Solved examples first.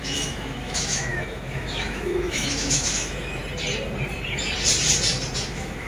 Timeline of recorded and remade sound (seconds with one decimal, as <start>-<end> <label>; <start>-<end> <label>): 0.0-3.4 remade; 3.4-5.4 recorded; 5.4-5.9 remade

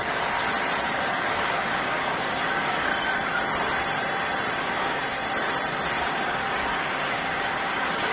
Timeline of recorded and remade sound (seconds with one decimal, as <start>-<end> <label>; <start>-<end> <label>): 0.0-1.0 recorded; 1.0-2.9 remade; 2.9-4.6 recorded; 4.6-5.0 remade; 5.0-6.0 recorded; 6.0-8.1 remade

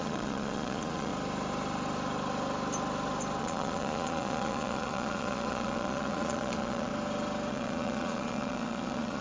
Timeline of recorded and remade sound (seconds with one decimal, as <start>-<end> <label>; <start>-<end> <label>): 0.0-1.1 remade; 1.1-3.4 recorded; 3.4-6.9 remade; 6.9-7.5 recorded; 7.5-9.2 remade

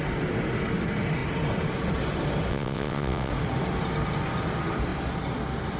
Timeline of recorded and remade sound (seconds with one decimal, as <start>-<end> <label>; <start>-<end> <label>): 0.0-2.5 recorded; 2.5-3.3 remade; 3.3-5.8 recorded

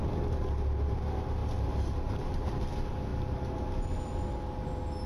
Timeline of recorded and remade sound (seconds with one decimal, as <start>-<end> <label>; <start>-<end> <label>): 0.0-1.4 recorded; 1.4-2.5 remade; 2.5-5.1 recorded

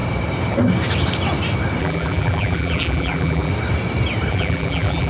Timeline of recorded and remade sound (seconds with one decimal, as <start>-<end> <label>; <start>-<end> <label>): 0.0-1.8 recorded; 1.8-3.5 remade; 3.5-4.3 recorded; 4.3-5.1 remade

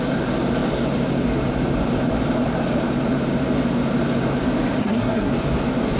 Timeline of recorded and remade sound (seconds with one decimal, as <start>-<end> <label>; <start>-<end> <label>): 0.0-4.8 recorded; 4.8-5.3 remade; 5.3-6.0 recorded